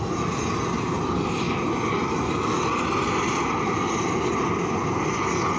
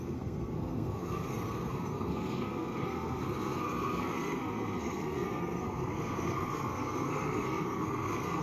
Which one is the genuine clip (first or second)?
first